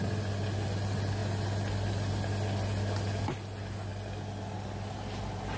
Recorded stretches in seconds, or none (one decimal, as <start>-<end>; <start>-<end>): 0.0-1.2; 2.1-5.6